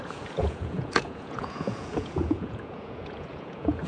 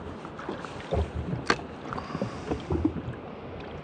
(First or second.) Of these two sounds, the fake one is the first